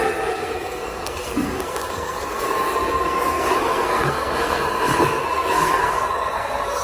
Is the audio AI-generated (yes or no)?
yes